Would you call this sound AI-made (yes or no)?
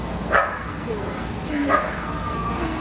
yes